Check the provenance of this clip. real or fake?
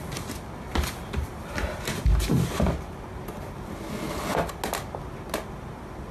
real